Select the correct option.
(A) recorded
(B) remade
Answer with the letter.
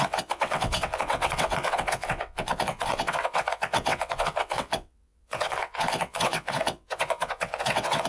B